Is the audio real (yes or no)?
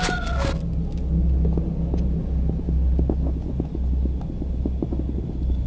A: yes